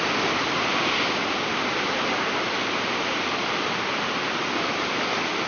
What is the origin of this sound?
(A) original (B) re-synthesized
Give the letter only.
A